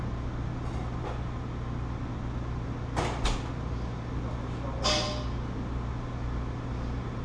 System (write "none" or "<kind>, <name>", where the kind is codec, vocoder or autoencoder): none